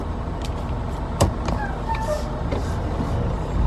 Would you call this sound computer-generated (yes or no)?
no